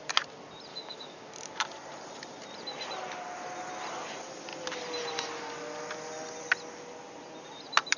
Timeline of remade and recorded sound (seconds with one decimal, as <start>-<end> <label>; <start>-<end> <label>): 0.0-0.7 recorded; 0.7-1.3 remade; 1.3-8.0 recorded